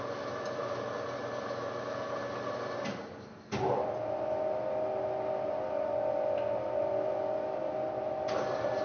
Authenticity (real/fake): real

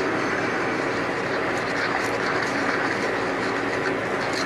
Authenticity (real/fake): real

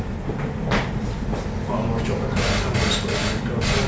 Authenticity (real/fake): real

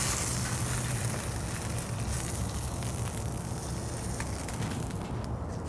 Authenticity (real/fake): real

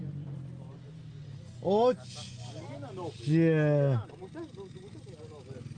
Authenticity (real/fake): real